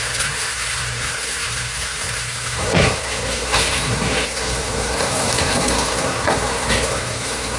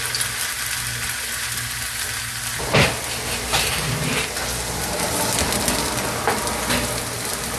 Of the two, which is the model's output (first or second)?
first